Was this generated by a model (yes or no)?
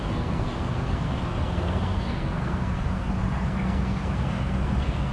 yes